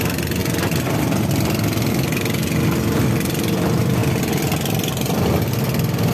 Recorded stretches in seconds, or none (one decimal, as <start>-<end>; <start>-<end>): 0.0-6.1